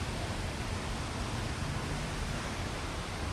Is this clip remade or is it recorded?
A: recorded